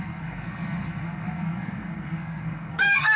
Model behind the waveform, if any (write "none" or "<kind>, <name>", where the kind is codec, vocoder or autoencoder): codec, SNAC